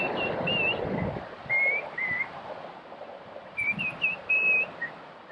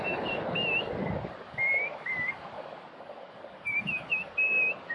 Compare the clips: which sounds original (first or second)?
first